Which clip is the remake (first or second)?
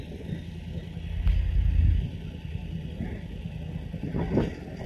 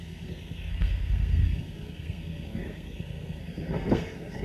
second